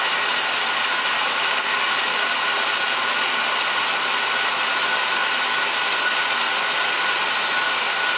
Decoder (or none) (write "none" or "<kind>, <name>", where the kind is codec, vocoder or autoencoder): none